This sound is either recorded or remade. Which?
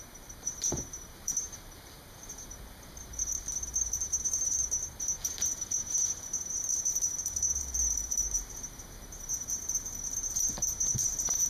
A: remade